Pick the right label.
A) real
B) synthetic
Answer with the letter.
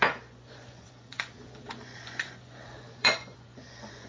B